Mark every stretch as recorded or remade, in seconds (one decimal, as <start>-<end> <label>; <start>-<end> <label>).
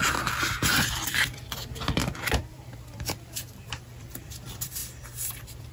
0.0-1.1 recorded; 1.1-2.0 remade; 2.0-2.5 recorded; 2.5-4.8 remade; 4.8-5.3 recorded; 5.3-5.7 remade